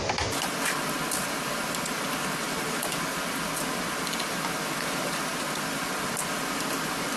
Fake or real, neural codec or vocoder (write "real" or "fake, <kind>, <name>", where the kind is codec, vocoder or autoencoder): real